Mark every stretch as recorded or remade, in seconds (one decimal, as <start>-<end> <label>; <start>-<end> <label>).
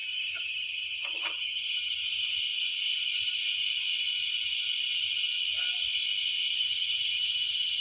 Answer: 0.0-2.0 remade; 2.0-6.6 recorded; 6.6-7.8 remade